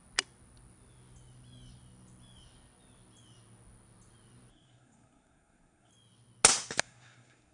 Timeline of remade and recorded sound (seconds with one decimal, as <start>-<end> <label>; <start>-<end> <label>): 0.0-4.5 recorded; 4.5-5.9 remade; 5.9-6.8 recorded; 6.8-7.5 remade